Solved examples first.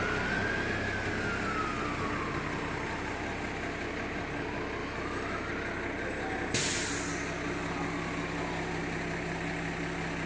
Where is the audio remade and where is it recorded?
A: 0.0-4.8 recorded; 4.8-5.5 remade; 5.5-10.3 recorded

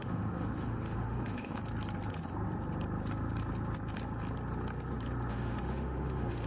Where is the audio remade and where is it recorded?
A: 0.0-1.6 remade; 1.6-5.3 recorded; 5.3-6.5 remade

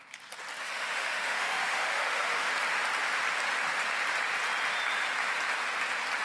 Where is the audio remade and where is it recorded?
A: 0.0-0.6 recorded; 0.6-2.5 remade; 2.5-6.2 recorded

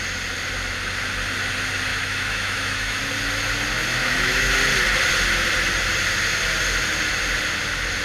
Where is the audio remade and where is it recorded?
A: 0.0-1.9 recorded; 1.9-3.0 remade; 3.0-4.0 recorded; 4.0-4.5 remade; 4.5-8.0 recorded

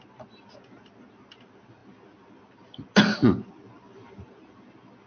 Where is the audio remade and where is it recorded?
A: 0.0-5.1 recorded